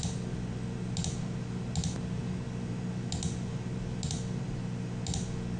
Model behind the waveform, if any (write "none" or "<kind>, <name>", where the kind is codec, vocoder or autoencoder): none